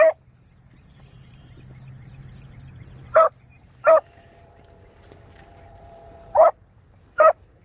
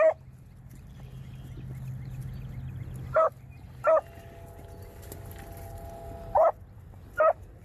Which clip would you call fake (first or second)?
first